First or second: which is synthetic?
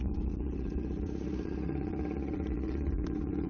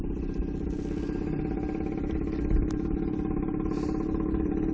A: first